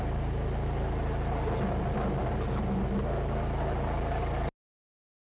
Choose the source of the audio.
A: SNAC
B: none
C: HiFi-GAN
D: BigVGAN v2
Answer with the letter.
B